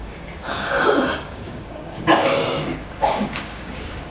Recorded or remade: remade